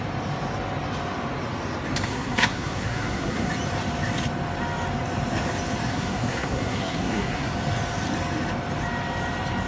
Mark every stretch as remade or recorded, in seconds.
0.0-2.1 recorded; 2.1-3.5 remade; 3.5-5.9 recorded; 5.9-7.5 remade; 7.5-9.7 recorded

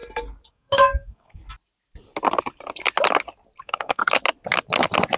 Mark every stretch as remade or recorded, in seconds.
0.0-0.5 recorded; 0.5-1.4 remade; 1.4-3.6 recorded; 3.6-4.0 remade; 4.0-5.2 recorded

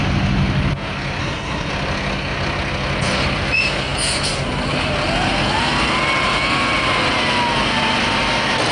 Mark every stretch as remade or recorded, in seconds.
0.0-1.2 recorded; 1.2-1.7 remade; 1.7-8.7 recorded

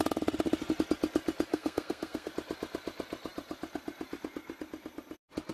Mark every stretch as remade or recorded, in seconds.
0.0-1.5 recorded; 1.5-2.3 remade; 2.3-5.5 recorded